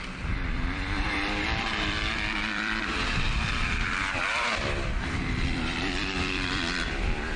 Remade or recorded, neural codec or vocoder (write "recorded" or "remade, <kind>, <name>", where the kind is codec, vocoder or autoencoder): remade, vocoder, BigVGAN v2